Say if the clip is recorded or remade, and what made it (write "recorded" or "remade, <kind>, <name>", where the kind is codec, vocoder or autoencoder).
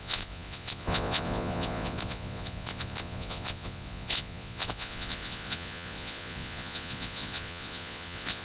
remade, vocoder, Vocos